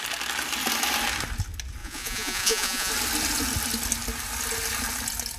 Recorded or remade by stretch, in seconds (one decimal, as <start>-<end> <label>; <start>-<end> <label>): 0.0-1.8 recorded; 1.8-2.9 remade; 2.9-5.4 recorded